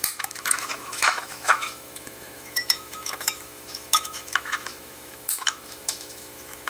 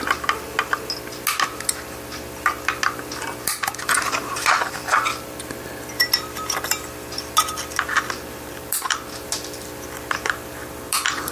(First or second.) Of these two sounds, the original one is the second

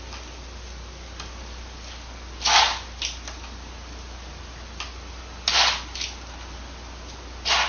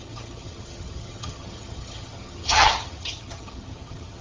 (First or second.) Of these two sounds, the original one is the first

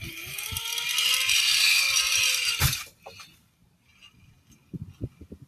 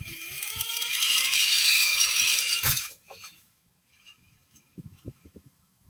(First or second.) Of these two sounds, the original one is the first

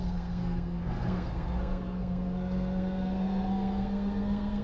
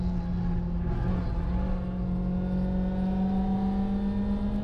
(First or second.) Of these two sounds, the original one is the second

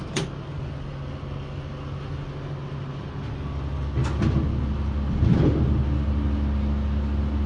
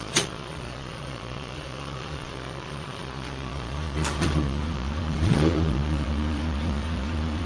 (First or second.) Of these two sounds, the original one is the first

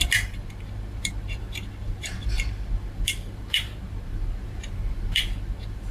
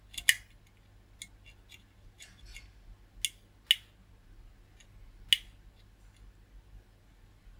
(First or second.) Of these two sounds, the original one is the second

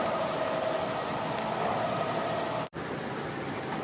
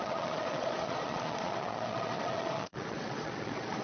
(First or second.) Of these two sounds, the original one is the first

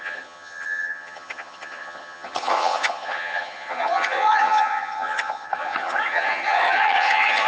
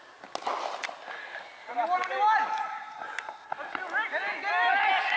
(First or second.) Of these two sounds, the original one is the second